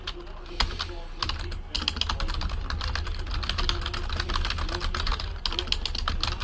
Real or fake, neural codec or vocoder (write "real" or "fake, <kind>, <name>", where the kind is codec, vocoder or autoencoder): real